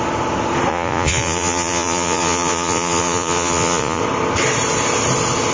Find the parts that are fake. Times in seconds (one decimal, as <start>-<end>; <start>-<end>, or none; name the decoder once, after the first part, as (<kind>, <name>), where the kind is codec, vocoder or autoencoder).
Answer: 0.7-4.0 (vocoder, Vocos)